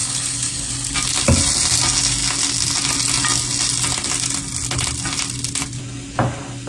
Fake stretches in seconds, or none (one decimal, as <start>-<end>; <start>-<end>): 0.0-0.7